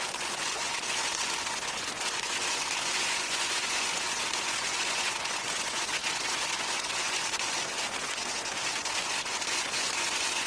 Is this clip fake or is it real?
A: fake